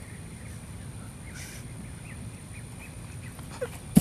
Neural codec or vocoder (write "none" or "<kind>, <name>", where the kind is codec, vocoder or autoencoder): none